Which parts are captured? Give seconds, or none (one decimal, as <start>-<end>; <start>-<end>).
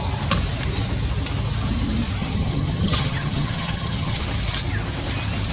0.0-2.2; 4.2-5.5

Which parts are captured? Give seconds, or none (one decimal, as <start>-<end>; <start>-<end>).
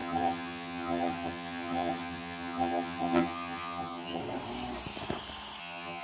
4.2-5.6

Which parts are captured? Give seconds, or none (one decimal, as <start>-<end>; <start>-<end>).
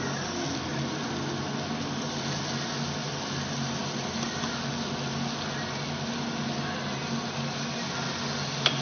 0.0-8.8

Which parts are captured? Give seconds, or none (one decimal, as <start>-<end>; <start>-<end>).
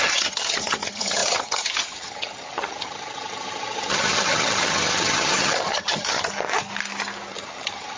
6.3-7.3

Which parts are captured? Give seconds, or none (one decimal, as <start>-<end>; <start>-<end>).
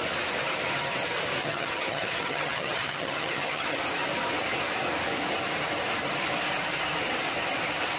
0.0-1.4; 3.8-8.0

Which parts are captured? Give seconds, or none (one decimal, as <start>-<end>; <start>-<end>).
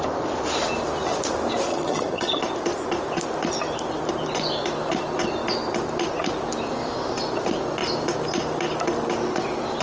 0.0-1.7; 2.4-9.8